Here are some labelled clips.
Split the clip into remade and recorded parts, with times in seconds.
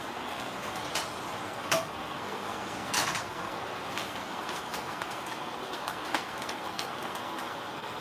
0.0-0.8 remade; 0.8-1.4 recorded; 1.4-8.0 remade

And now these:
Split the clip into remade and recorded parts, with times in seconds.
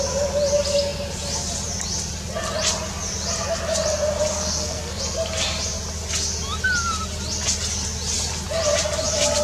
0.0-4.3 recorded; 4.3-5.0 remade; 5.0-9.4 recorded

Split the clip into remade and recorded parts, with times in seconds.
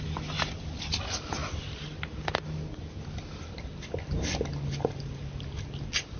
0.0-6.2 recorded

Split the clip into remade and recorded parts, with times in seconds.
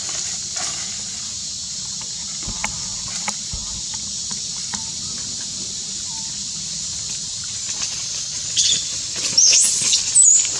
0.0-10.6 recorded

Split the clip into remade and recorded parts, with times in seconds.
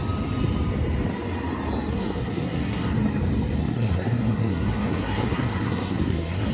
0.0-1.9 recorded; 1.9-2.9 remade; 2.9-3.6 recorded; 3.6-6.5 remade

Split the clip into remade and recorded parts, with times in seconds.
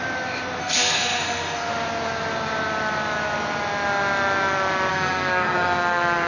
0.0-0.6 recorded; 0.6-1.7 remade; 1.7-4.9 recorded; 4.9-6.3 remade